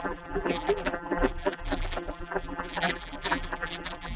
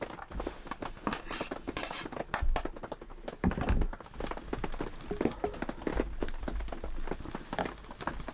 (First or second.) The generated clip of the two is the first